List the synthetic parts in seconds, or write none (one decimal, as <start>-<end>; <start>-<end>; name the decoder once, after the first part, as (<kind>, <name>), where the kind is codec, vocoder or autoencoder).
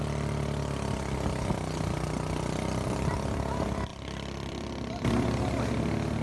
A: 3.9-5.4 (vocoder, BigVGAN v2)